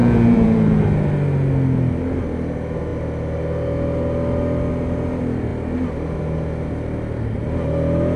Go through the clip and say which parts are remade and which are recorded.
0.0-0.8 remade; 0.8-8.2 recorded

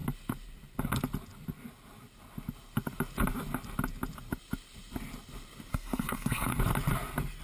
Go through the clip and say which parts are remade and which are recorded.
0.0-5.7 recorded; 5.7-6.6 remade; 6.6-7.4 recorded

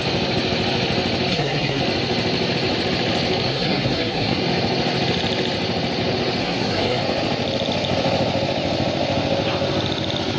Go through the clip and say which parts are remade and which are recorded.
0.0-1.3 recorded; 1.3-1.8 remade; 1.8-3.5 recorded; 3.5-4.4 remade; 4.4-6.4 recorded; 6.4-7.0 remade; 7.0-10.4 recorded

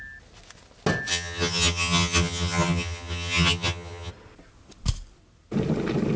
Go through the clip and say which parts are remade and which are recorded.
0.0-1.1 recorded; 1.1-4.1 remade; 4.1-6.2 recorded